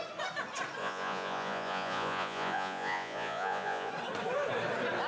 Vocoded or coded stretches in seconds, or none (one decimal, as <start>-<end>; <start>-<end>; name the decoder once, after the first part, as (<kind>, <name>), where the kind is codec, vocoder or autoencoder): 0.8-3.9 (vocoder, Vocos)